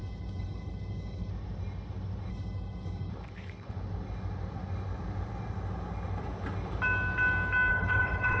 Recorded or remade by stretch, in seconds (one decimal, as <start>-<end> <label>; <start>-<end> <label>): 0.0-1.3 remade; 1.3-2.3 recorded; 2.3-3.1 remade; 3.1-7.7 recorded; 7.7-8.4 remade